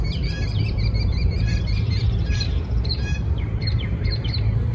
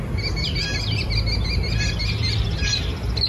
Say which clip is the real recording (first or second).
second